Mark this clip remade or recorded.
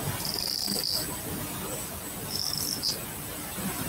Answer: recorded